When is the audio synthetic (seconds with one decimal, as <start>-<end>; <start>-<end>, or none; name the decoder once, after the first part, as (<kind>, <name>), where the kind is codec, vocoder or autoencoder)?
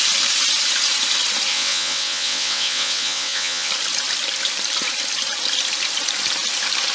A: 1.5-3.7 (vocoder, WaveNeXt)